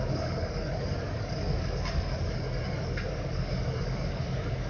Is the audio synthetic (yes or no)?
yes